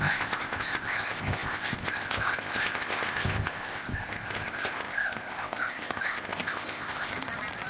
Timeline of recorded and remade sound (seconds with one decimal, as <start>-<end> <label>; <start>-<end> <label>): 0.0-7.1 remade; 7.1-7.7 recorded

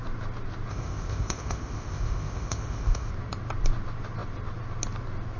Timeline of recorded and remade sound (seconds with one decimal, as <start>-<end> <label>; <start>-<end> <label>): 0.0-0.7 recorded; 0.7-3.1 remade; 3.1-5.4 recorded

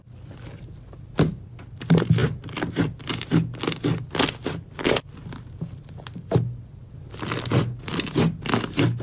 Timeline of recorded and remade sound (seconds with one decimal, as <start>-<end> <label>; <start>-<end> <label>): 0.0-9.0 recorded

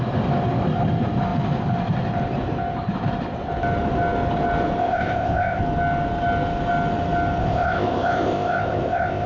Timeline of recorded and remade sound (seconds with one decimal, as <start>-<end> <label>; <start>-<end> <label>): 0.0-4.8 recorded; 4.8-5.6 remade; 5.6-7.4 recorded; 7.4-9.3 remade

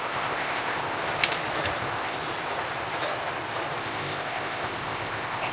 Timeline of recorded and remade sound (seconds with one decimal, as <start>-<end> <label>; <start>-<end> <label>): 0.0-1.0 remade; 1.0-1.8 recorded; 1.8-2.2 remade; 2.2-3.8 recorded; 3.8-5.5 remade

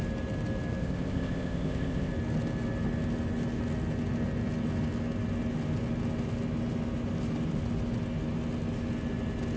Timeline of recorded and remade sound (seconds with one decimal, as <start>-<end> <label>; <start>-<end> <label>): 0.0-0.8 recorded; 0.8-2.1 remade; 2.1-9.6 recorded

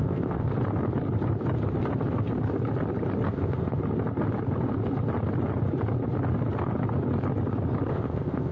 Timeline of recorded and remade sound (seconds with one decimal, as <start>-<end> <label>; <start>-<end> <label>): 0.0-0.5 remade; 0.5-3.3 recorded; 3.3-3.8 remade; 3.8-7.9 recorded; 7.9-8.5 remade

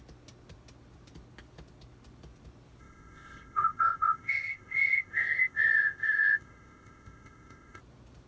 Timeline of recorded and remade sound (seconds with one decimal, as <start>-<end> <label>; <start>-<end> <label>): 0.0-2.8 recorded; 2.8-7.8 remade; 7.8-8.3 recorded